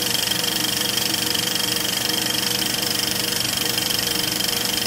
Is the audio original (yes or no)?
no